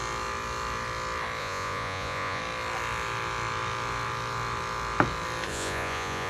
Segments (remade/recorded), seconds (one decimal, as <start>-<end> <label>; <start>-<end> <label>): 0.0-1.4 recorded; 1.4-2.4 remade; 2.4-5.5 recorded; 5.5-6.3 remade